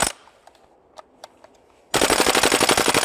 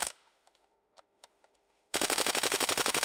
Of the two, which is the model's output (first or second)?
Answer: second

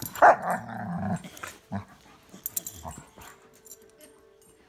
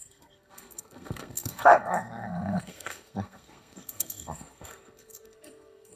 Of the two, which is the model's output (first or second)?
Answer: second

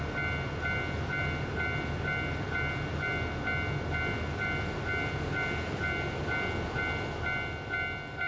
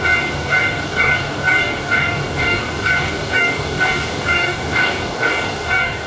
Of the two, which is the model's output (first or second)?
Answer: second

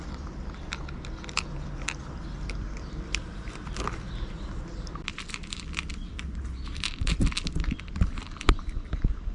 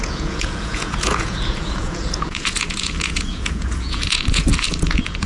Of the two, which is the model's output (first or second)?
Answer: second